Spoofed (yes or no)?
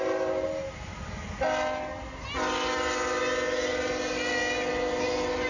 no